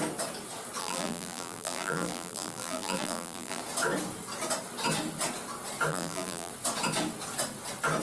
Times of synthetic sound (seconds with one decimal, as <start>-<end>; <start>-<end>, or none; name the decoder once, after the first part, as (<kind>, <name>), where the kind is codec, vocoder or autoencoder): 0.8-3.6 (vocoder, BigVGAN v2); 5.9-6.5